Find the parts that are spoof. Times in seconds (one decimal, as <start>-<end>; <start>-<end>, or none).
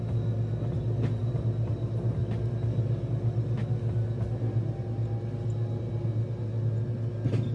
1.2-1.7